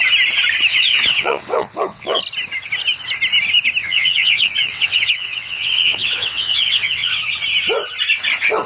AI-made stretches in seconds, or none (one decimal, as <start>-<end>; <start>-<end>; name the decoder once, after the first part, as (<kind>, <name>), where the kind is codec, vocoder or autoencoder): 0.7-2.2 (vocoder, WaveNeXt); 3.8-7.2

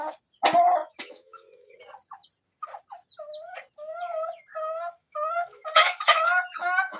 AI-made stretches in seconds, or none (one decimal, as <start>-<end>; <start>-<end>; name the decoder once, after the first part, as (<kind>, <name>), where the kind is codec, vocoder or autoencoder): 0.8-1.8 (autoencoder, DAC-VAE); 5.0-7.0